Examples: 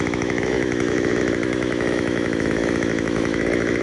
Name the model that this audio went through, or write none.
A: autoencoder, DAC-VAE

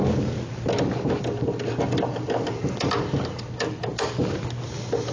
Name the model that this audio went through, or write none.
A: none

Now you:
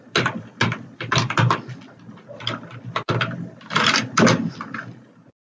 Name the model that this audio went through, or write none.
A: none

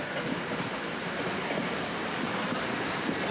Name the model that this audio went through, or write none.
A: vocoder, BigVGAN v2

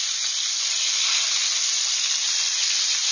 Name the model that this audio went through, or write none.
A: none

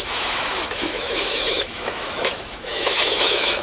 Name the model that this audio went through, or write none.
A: autoencoder, DAC-VAE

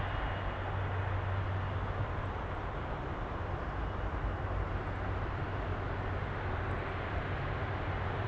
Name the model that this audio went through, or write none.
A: none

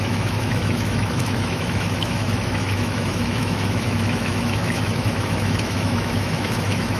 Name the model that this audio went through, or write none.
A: autoencoder, DAC-VAE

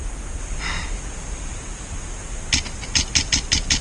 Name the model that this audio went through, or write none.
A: none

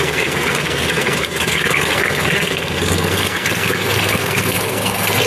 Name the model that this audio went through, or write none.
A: codec, SNAC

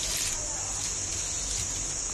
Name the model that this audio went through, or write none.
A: none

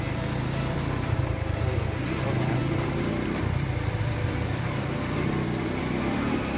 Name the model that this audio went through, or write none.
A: vocoder, BigVGAN v2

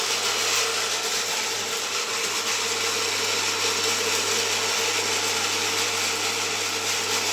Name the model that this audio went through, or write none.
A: none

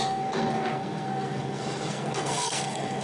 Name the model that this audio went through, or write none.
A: codec, SNAC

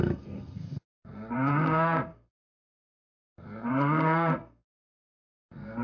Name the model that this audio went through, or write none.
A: codec, SNAC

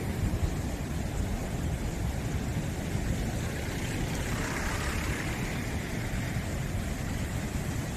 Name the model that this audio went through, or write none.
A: vocoder, BigVGAN v2